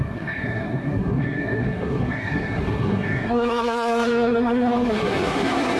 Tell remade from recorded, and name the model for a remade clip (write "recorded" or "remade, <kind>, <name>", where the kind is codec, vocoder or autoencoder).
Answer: remade, codec, SNAC